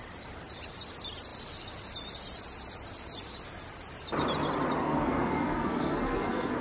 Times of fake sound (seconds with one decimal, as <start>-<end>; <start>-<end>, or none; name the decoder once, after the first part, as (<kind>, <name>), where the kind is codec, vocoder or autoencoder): 4.8-6.6 (codec, SNAC)